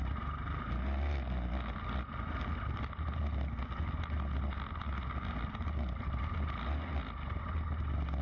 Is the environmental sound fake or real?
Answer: real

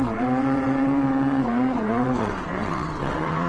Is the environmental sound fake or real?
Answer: fake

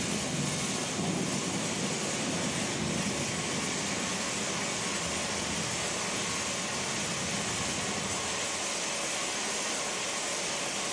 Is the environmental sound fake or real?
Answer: real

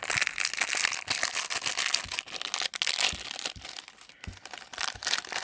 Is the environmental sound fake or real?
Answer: real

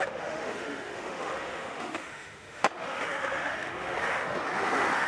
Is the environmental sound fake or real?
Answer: fake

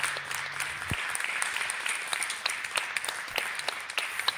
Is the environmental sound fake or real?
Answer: real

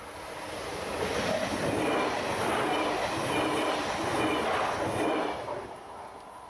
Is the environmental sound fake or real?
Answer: real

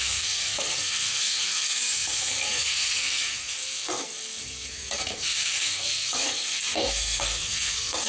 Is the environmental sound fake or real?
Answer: fake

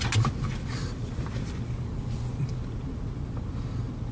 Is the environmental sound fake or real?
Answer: real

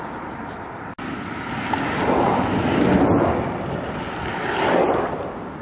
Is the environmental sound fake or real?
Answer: real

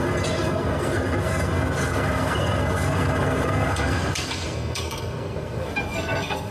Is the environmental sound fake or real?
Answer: fake